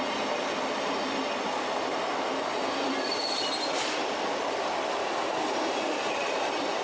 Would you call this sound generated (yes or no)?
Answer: no